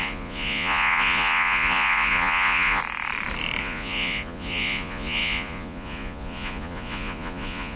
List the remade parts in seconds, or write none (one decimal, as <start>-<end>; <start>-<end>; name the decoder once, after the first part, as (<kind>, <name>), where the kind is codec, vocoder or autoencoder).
0.0-2.8 (vocoder, Vocos); 3.6-7.8